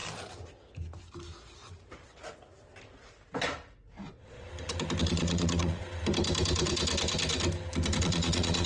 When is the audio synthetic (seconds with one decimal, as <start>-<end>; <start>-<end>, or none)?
4.1-4.5; 5.0-5.8; 8.0-8.7